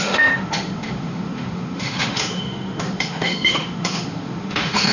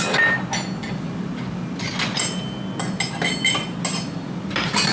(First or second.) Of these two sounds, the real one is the second